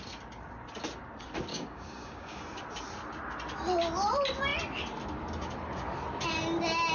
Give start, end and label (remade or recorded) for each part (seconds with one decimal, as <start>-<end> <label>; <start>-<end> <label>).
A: 0.0-1.5 recorded; 1.5-2.4 remade; 2.4-6.9 recorded